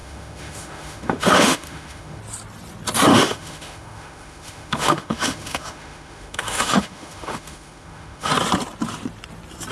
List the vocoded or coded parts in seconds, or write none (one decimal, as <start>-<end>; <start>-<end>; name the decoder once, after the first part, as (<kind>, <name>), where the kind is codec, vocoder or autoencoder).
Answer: 0.0-2.2 (autoencoder, DAC-VAE); 3.1-8.3